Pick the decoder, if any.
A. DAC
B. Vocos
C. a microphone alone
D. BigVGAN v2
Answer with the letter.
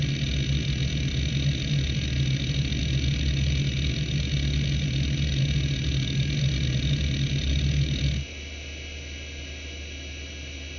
C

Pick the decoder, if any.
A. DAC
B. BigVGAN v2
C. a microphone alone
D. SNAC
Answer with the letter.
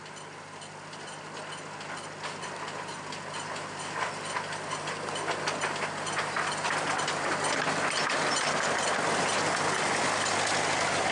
C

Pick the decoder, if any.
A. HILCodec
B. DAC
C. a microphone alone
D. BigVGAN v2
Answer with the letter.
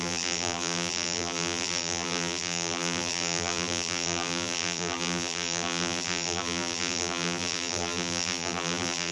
D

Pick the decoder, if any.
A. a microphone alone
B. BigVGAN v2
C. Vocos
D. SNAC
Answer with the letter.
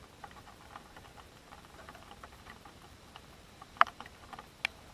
B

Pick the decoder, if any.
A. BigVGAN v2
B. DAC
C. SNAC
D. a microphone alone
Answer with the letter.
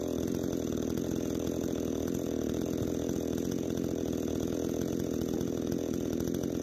A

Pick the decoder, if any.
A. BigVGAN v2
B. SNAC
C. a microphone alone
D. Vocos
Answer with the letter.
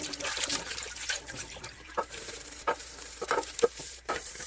A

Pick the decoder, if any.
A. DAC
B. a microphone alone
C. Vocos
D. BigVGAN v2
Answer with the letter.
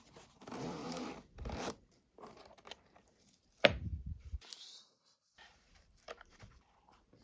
D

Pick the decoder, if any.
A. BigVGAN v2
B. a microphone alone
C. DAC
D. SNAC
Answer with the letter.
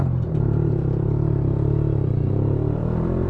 A